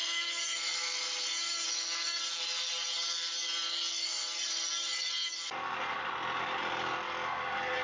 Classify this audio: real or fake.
real